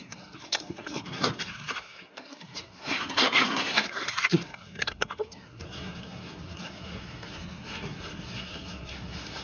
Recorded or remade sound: remade